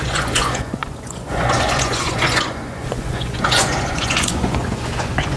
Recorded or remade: remade